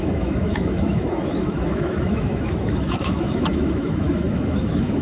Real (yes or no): no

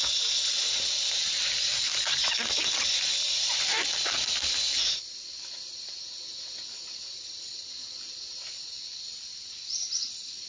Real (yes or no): yes